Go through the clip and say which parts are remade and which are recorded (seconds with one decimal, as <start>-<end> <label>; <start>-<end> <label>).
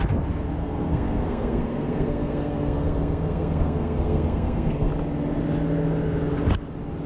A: 0.0-0.6 recorded; 0.6-4.9 remade; 4.9-7.1 recorded